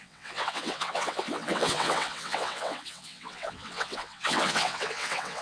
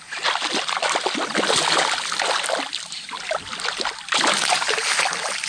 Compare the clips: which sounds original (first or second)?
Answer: second